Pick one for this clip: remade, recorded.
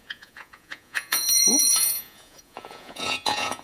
remade